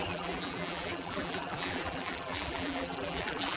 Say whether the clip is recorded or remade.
remade